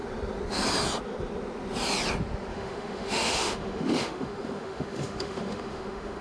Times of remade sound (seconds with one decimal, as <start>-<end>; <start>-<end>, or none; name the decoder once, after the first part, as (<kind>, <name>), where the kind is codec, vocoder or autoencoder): 2.5-6.2 (autoencoder, DAC-VAE)